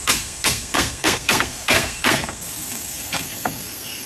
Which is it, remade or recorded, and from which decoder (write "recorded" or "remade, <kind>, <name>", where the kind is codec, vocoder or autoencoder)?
remade, codec, SNAC